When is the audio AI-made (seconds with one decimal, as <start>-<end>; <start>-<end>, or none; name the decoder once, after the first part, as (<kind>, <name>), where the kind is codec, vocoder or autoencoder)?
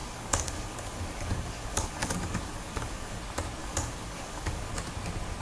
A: 0.0-3.2 (codec, DAC); 3.6-4.7